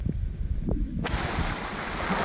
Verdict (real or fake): real